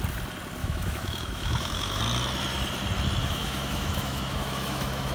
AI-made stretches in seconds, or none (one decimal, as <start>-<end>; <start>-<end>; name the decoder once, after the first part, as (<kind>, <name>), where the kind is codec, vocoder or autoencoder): 0.6-2.0 (autoencoder, DAC-VAE); 3.2-5.1